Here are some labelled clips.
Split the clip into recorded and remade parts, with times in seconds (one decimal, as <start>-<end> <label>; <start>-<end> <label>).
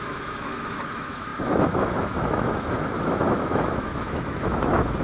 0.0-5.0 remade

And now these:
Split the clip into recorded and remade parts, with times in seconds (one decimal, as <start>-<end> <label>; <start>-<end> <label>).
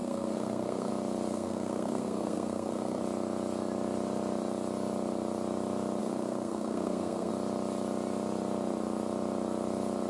0.0-0.9 remade; 0.9-1.3 recorded; 1.3-3.0 remade; 3.0-6.0 recorded; 6.0-7.3 remade; 7.3-10.1 recorded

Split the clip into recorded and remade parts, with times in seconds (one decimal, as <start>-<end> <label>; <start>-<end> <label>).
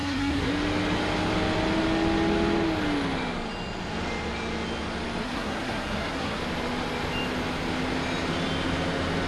0.0-0.5 remade; 0.5-5.2 recorded; 5.2-6.4 remade; 6.4-9.3 recorded